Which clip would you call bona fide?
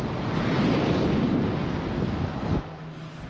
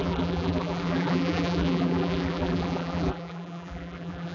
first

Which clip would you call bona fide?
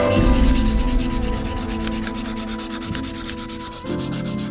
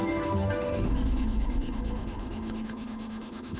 first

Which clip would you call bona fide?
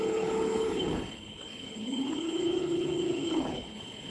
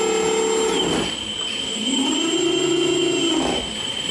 second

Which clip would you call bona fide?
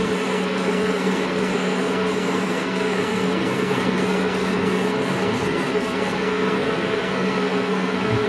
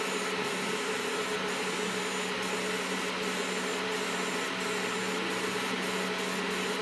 second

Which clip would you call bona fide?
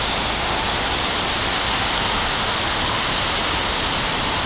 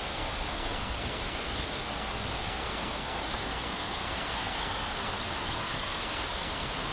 first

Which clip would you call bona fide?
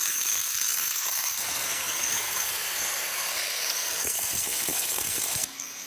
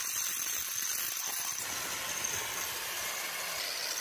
second